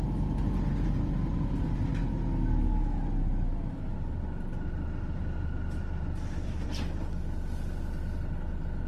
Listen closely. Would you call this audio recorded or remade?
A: recorded